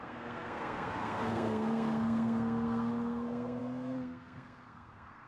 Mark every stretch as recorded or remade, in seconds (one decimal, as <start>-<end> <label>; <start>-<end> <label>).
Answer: 0.0-5.3 remade